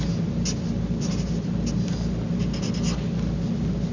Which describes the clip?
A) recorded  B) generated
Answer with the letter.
A